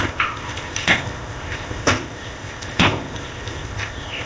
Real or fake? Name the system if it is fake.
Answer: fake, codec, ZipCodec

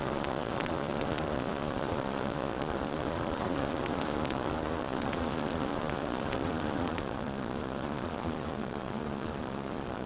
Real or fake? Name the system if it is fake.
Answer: fake, vocoder, Vocos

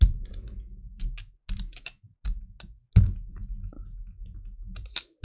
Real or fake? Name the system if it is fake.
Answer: real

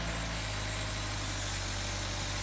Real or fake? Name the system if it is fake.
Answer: real